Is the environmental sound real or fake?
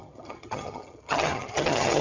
fake